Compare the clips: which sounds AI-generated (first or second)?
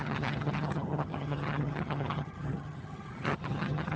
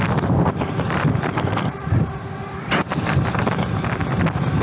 first